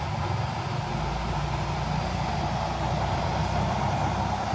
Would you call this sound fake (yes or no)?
no